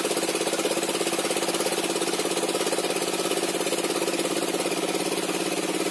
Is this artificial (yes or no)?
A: no